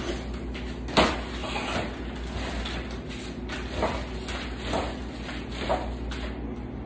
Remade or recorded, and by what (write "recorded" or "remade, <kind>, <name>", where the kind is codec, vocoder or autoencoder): recorded